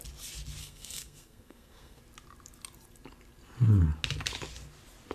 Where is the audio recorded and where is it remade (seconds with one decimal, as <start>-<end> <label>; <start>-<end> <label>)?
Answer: 0.0-0.6 recorded; 0.6-2.0 remade; 2.0-5.1 recorded